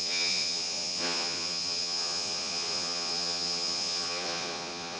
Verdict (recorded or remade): remade